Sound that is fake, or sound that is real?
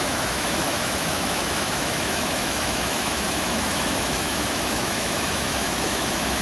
fake